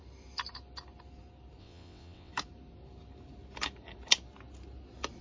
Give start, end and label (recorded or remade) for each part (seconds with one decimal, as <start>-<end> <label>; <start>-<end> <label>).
0.0-1.6 recorded; 1.6-2.3 remade; 2.3-5.2 recorded